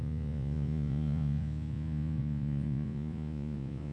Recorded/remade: remade